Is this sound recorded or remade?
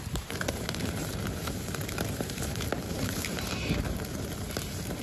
remade